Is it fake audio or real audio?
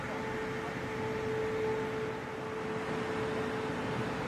real